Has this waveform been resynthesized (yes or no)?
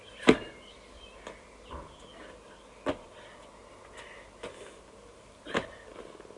no